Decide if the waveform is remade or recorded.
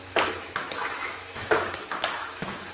remade